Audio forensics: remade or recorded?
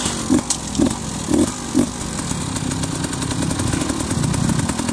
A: recorded